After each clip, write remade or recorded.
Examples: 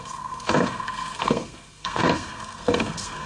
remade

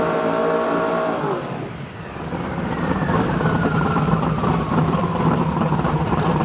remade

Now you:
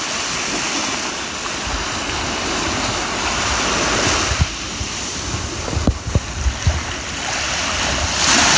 recorded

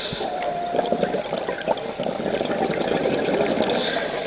recorded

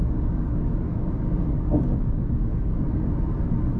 remade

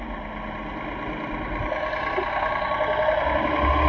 recorded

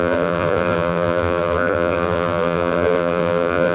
remade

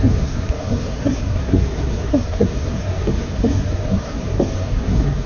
remade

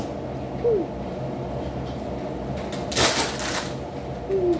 recorded